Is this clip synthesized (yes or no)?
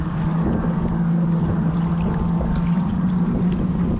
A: no